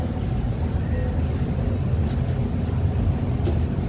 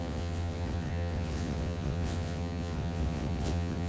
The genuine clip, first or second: first